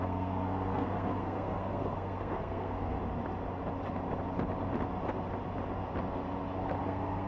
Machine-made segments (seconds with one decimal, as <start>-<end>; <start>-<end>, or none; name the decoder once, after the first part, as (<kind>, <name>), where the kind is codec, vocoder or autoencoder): 0.0-3.0 (codec, SNAC); 6.8-7.3